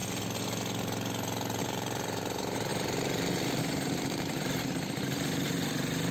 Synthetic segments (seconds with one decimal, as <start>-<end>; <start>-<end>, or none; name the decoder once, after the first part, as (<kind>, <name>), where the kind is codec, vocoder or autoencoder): 1.6-2.7 (vocoder, BigVGAN v2); 3.6-6.1